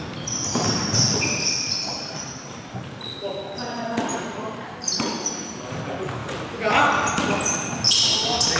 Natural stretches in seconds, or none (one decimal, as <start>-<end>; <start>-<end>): 0.0-0.5; 2.7-4.1; 5.0-8.6